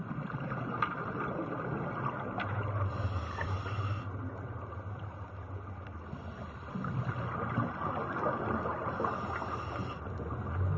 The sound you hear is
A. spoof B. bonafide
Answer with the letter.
B